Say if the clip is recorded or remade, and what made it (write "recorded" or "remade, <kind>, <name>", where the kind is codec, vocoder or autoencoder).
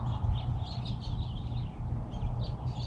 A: recorded